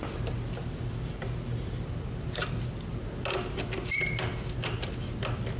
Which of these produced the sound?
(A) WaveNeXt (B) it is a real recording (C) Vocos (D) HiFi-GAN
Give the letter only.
B